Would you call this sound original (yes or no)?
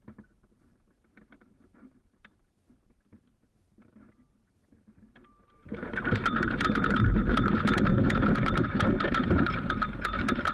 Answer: no